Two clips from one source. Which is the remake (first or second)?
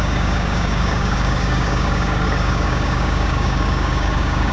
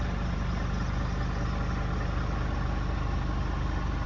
first